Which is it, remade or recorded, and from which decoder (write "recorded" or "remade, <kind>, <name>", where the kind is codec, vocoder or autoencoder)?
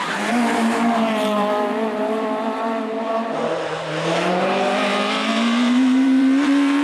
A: remade, vocoder, BigVGAN v2